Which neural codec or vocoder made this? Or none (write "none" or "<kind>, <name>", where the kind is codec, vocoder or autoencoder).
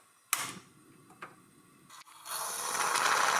none